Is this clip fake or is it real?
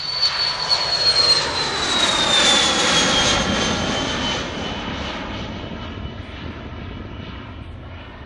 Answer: real